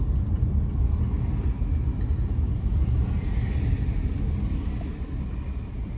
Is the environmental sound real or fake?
real